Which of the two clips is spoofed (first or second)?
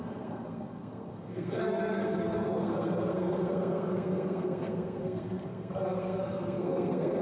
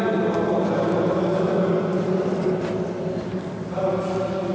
first